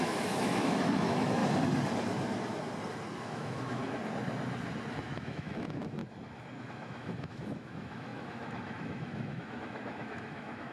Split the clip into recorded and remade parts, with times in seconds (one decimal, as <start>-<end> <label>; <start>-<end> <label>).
0.0-1.4 remade; 1.4-3.2 recorded; 3.2-3.8 remade; 3.8-4.9 recorded; 4.9-6.0 remade; 6.0-6.6 recorded; 6.6-10.7 remade